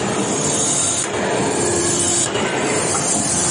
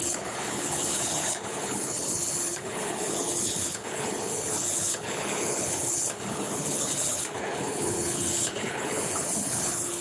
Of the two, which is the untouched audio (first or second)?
first